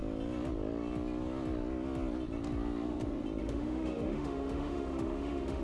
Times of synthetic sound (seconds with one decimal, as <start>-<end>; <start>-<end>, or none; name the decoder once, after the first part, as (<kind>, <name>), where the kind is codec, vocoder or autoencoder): 3.4-5.6 (autoencoder, DAC-VAE)